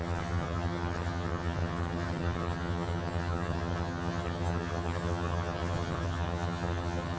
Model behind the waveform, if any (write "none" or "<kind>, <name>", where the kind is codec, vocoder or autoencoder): vocoder, HiFi-GAN